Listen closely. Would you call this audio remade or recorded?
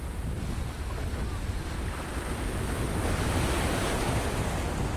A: recorded